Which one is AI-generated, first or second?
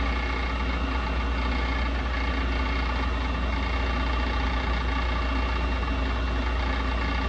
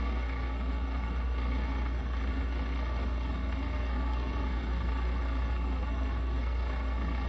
second